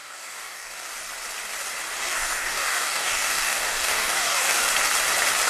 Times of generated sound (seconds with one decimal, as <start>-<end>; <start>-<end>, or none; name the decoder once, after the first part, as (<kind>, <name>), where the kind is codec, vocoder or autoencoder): 0.0-0.9 (codec, DAC); 2.0-4.7